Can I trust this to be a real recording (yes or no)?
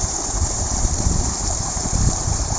no